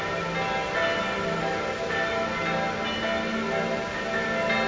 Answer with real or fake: real